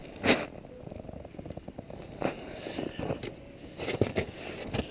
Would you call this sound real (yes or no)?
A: yes